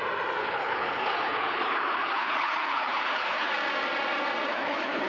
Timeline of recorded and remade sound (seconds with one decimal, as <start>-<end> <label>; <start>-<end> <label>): 0.0-0.4 recorded; 0.4-3.5 remade; 3.5-4.5 recorded; 4.5-5.1 remade